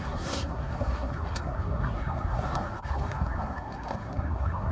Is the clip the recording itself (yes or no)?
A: no